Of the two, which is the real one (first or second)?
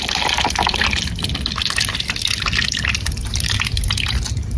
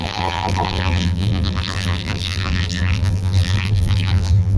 first